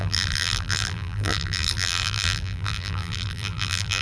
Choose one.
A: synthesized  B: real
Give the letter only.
A